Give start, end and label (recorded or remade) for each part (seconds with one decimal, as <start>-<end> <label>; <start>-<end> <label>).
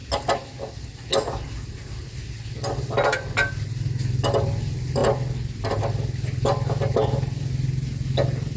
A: 0.0-8.6 recorded